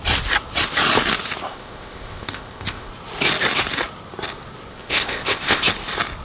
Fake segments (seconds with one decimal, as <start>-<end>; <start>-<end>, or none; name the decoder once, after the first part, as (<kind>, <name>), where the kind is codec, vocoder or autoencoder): 1.5-2.9 (codec, ZipCodec); 4.7-5.6